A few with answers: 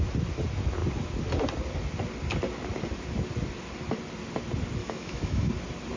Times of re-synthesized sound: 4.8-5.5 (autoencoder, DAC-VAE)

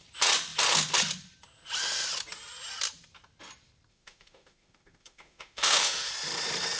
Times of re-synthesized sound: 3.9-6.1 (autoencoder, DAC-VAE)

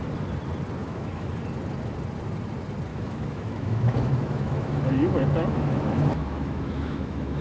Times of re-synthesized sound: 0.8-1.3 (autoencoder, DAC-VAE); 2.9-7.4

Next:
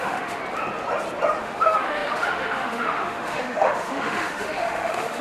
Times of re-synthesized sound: 0.0-0.4 (autoencoder, DAC-VAE); 1.4-5.2